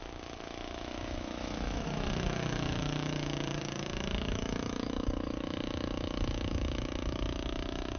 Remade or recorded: remade